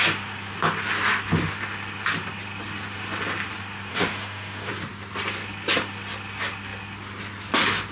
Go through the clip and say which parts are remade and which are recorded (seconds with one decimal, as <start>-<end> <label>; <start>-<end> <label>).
0.0-3.9 recorded; 3.9-4.7 remade; 4.7-7.9 recorded